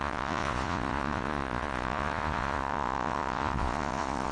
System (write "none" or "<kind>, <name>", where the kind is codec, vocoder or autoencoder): vocoder, Vocos